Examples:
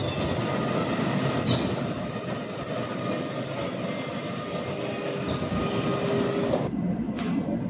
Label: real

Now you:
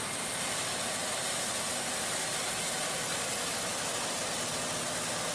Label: real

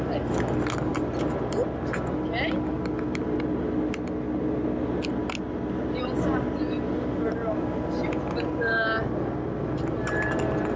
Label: real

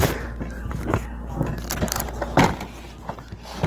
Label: real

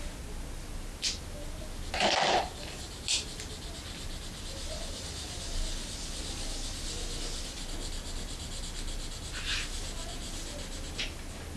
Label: real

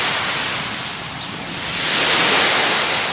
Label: real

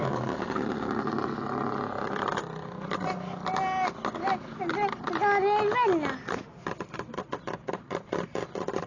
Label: real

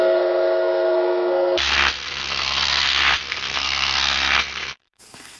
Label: fake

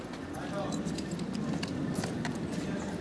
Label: real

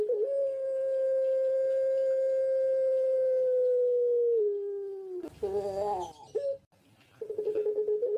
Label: real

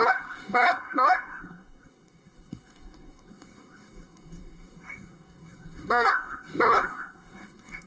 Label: fake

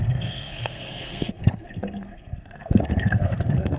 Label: fake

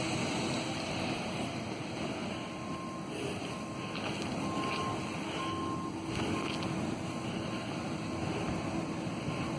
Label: real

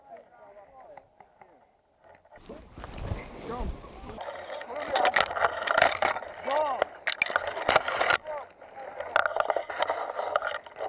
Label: real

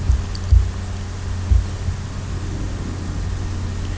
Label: real